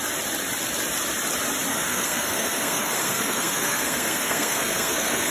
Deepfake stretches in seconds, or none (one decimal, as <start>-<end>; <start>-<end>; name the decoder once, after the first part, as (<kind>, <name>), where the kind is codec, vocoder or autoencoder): 1.7-5.3 (codec, SNAC)